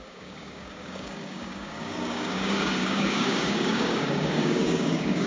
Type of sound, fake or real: fake